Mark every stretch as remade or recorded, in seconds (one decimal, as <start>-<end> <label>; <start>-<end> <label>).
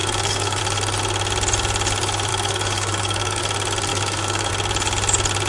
0.0-0.6 remade; 0.6-2.3 recorded; 2.3-3.4 remade; 3.4-3.9 recorded; 3.9-4.5 remade; 4.5-5.5 recorded